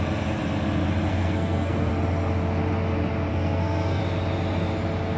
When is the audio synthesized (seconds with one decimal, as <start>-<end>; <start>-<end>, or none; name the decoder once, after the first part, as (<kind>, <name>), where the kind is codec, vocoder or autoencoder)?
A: 1.1-1.9 (codec, SNAC); 3.3-4.0